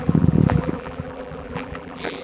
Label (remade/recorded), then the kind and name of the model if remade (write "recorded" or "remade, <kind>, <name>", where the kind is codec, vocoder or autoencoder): remade, vocoder, BigVGAN v2